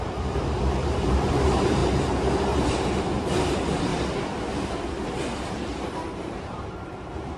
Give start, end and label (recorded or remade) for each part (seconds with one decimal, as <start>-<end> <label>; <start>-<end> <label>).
0.0-3.9 remade; 3.9-5.5 recorded; 5.5-7.4 remade